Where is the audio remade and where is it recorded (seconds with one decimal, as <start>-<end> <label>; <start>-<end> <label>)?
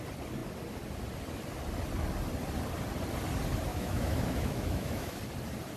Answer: 0.0-3.7 recorded; 3.7-5.2 remade; 5.2-5.8 recorded